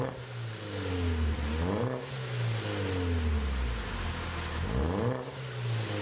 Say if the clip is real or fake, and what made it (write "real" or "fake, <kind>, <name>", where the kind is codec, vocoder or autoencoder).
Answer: real